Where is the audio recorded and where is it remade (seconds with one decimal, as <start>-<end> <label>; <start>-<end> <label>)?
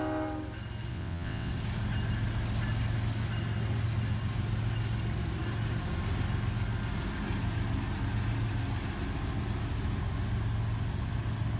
0.0-0.9 recorded; 0.9-1.5 remade; 1.5-11.6 recorded